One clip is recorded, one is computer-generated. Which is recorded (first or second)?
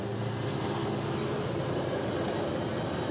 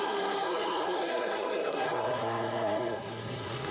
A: first